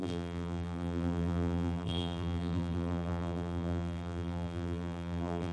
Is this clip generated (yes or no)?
yes